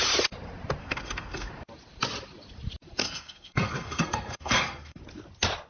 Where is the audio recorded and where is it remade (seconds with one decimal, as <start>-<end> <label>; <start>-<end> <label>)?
0.0-0.8 recorded; 0.8-1.5 remade; 1.5-3.0 recorded; 3.0-5.0 remade; 5.0-5.7 recorded